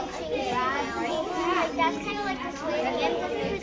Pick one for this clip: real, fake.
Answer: real